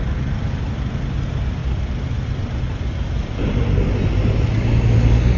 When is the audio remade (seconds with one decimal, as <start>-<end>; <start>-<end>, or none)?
none